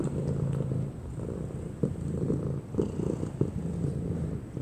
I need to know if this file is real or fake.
real